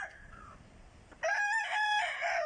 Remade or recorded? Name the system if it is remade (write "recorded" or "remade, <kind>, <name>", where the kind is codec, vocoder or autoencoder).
recorded